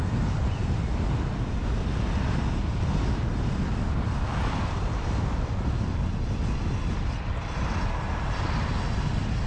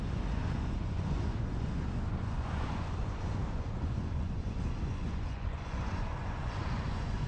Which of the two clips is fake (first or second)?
second